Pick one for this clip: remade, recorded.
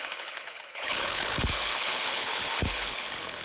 remade